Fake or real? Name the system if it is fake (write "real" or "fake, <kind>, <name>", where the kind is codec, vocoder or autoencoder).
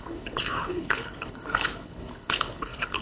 fake, codec, HILCodec